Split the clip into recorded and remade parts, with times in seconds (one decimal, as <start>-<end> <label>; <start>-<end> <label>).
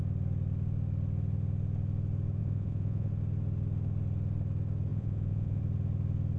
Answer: 0.0-2.4 recorded; 2.4-3.1 remade; 3.1-4.9 recorded; 4.9-5.6 remade; 5.6-6.4 recorded